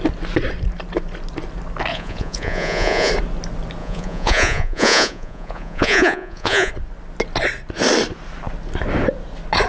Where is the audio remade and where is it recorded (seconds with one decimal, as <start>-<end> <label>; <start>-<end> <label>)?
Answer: 0.0-1.9 recorded; 1.9-3.1 remade; 3.1-3.8 recorded; 3.8-6.7 remade; 6.7-9.7 recorded

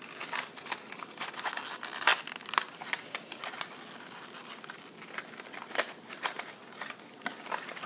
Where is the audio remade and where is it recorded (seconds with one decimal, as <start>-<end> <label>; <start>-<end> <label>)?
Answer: 0.0-7.9 recorded